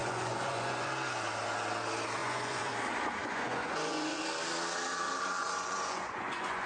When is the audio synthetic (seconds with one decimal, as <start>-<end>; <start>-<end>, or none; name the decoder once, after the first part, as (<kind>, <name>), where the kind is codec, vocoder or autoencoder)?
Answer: 0.0-0.9 (vocoder, Vocos); 2.2-2.7; 3.2-4.2; 5.4-6.7